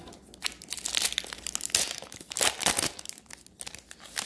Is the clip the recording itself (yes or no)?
yes